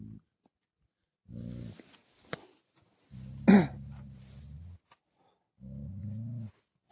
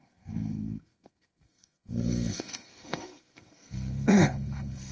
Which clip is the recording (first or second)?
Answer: first